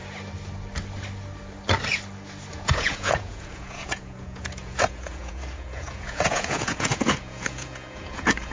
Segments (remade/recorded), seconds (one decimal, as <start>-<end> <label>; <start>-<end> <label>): 0.0-2.5 recorded; 2.5-8.5 remade